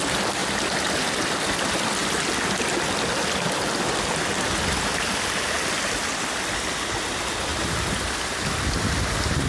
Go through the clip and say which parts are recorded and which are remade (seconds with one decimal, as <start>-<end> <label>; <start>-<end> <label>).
0.0-9.5 recorded